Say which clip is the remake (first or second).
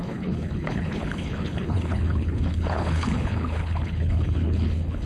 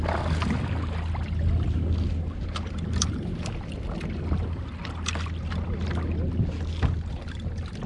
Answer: first